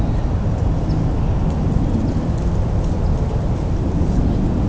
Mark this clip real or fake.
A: real